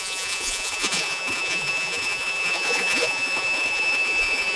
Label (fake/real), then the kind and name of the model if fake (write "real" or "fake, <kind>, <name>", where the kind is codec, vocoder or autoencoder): fake, vocoder, Vocos